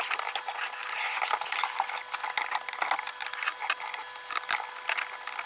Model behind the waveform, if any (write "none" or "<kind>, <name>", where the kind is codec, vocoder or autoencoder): none